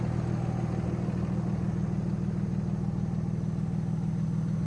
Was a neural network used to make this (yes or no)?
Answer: no